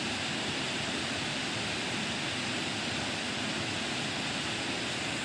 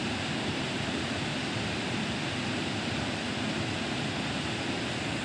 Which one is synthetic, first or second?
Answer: second